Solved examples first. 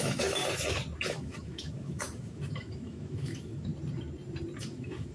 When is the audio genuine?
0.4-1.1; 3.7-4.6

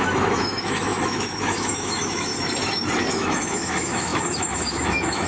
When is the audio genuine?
2.3-3.1

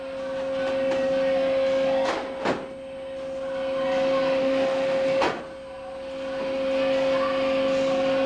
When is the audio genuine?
0.0-4.4; 5.4-8.3

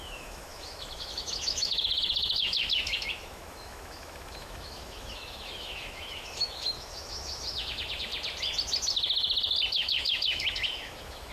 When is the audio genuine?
8.1-9.7

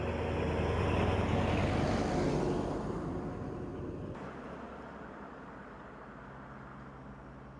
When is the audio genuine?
0.0-7.6

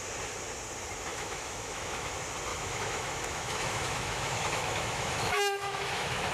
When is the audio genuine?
0.0-1.1; 2.1-2.5